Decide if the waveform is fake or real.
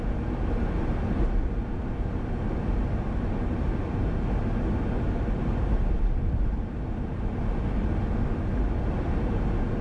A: real